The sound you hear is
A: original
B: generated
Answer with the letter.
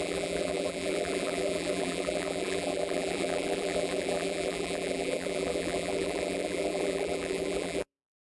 B